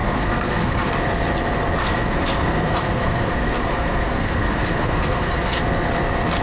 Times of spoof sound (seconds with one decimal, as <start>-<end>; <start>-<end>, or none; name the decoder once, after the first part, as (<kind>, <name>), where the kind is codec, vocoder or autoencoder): 0.0-0.9 (codec, SNAC); 1.8-5.6